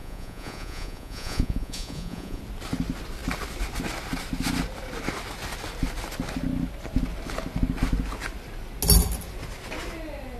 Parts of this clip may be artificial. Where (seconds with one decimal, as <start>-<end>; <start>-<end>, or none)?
0.0-2.4